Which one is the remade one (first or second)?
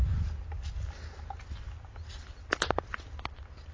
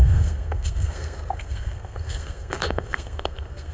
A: second